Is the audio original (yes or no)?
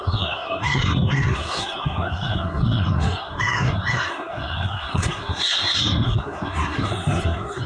no